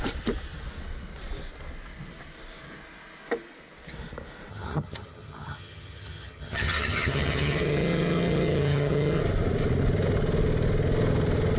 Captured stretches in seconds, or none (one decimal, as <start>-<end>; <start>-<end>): 0.0-4.5; 9.2-11.6